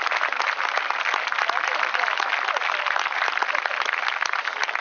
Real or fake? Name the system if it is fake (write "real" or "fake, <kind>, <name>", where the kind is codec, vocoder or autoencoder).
real